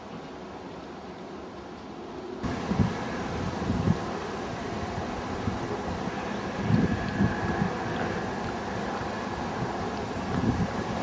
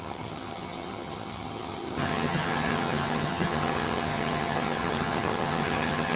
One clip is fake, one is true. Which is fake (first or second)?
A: second